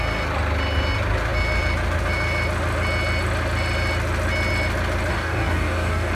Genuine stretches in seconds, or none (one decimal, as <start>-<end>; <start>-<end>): 0.0-5.1